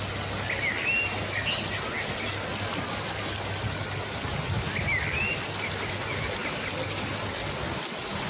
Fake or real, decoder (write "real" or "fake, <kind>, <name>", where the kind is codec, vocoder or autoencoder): real